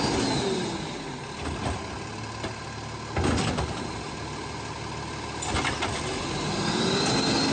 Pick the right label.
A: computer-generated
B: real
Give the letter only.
B